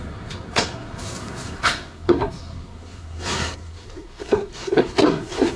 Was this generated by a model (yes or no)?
yes